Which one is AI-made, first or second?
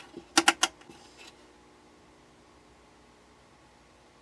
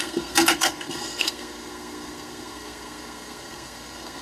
second